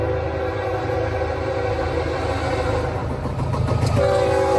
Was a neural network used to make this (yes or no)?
no